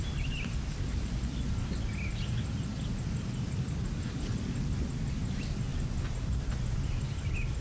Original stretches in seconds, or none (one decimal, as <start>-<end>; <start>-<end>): 0.0-7.6

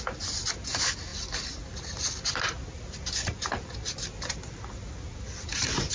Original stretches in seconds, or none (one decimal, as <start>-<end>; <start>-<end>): 0.0-5.9

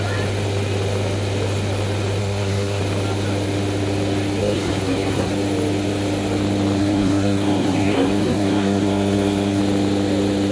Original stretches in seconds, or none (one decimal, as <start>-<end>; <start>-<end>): 0.0-2.2; 2.8-4.4; 5.3-6.8; 9.6-10.5

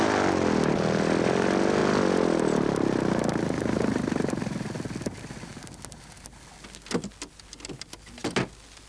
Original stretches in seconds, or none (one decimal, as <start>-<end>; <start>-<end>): 0.0-8.9